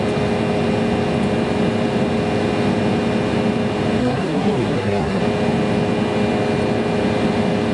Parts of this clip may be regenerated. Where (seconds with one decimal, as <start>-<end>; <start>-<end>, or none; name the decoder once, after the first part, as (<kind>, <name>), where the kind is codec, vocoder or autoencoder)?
4.0-5.2 (codec, SNAC)